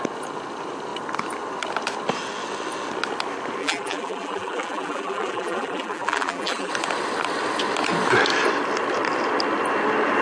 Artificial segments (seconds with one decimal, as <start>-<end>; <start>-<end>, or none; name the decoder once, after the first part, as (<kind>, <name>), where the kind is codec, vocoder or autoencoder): 3.6-6.7 (vocoder, BigVGAN v2)